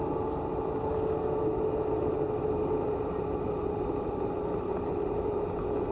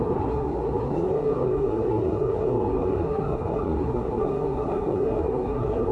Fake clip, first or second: second